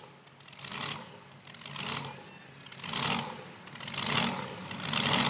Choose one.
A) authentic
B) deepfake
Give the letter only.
A